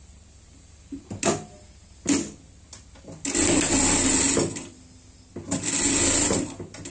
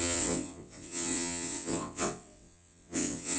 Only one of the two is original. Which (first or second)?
first